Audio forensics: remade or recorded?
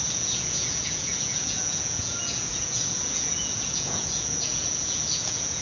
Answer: remade